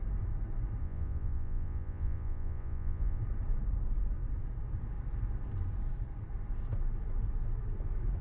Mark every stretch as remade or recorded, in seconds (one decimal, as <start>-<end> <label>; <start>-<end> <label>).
0.0-0.8 recorded; 0.8-3.2 remade; 3.2-8.2 recorded